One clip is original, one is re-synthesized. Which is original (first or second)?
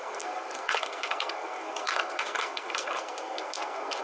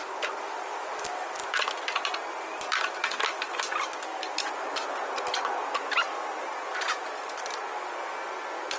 second